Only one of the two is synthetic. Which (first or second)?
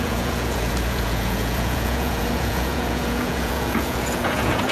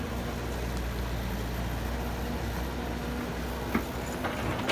first